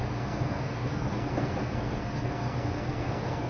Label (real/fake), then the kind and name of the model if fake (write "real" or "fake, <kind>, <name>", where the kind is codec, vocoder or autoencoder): fake, codec, SNAC